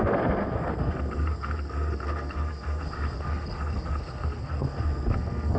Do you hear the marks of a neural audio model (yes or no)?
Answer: yes